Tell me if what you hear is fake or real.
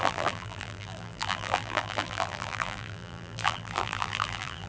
fake